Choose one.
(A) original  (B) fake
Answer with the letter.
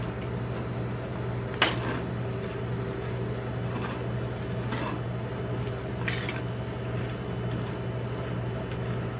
A